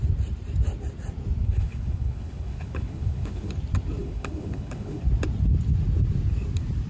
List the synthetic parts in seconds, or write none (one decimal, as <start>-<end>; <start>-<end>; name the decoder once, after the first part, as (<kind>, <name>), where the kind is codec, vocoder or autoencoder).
1.4-3.5 (codec, HILCodec); 4.0-5.0